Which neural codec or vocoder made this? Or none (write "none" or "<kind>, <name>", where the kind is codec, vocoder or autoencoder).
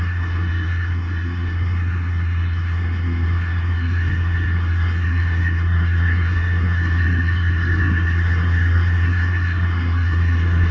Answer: codec, SNAC